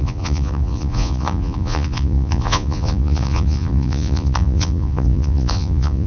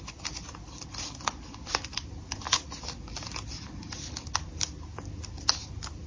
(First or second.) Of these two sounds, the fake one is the first